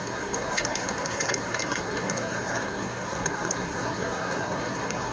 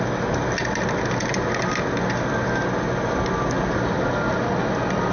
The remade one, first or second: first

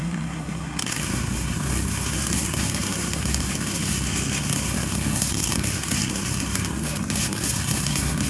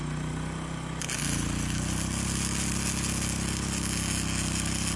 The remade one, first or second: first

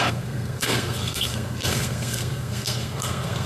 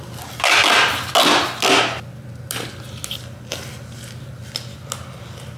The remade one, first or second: first